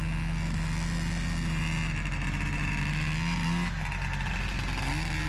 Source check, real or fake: real